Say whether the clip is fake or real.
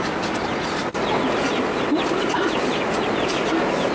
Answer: real